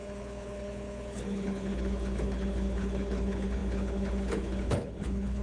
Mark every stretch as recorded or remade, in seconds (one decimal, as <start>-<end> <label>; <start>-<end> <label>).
0.0-5.4 remade